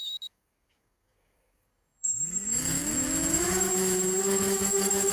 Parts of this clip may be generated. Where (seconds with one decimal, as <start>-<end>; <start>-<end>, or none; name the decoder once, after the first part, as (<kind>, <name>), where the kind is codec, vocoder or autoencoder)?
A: 0.0-2.8 (codec, DAC); 3.3-3.7; 4.2-5.1